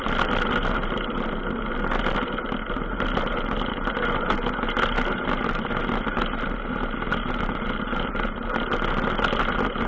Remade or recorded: recorded